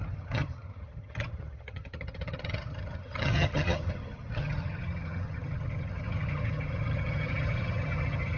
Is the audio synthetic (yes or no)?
yes